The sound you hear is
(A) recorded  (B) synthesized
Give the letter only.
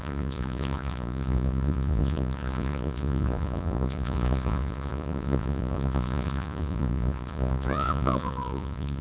B